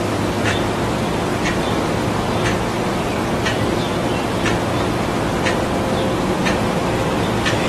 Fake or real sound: real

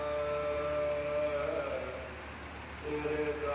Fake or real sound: real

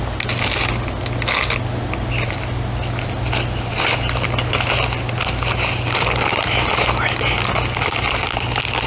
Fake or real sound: real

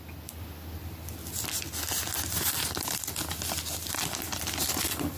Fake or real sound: real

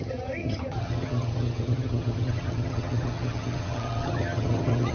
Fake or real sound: fake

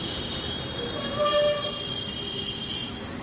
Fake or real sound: real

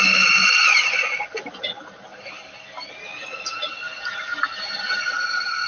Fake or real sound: real